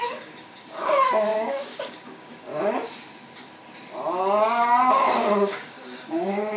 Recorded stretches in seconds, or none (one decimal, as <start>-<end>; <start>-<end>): 2.5-4.9